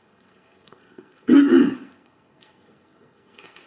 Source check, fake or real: fake